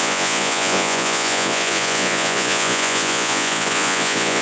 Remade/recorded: remade